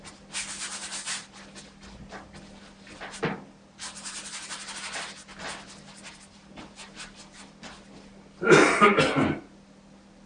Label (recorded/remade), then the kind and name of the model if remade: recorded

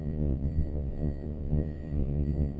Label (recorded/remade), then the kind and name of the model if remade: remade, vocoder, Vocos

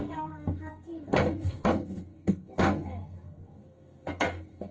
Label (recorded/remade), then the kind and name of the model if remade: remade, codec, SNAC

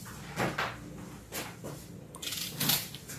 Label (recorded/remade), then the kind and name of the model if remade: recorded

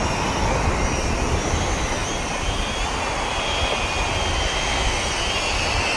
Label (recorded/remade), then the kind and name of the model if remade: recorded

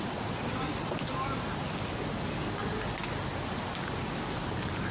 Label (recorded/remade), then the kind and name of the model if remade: recorded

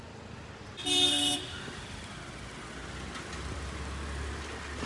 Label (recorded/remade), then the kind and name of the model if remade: recorded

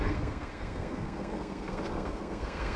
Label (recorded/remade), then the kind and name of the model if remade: remade, codec, SNAC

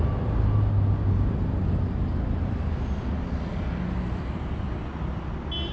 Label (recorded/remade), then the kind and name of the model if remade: recorded